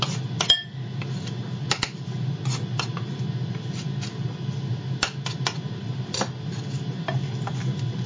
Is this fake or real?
real